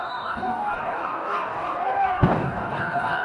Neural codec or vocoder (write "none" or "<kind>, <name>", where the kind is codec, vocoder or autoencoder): codec, DAC